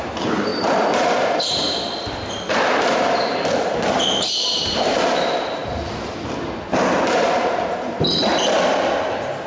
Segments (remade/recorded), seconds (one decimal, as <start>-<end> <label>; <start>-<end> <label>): 0.0-0.5 remade; 0.5-2.3 recorded; 2.3-5.6 remade; 5.6-9.5 recorded